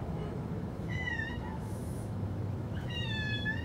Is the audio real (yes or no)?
no